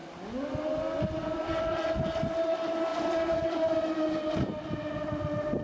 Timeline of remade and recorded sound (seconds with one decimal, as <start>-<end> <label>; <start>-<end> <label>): 0.0-5.6 recorded